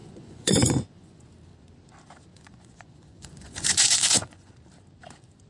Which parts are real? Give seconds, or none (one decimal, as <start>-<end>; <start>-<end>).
1.2-2.3; 4.5-5.5